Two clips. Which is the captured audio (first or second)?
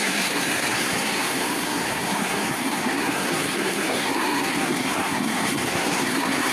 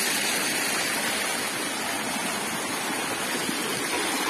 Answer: second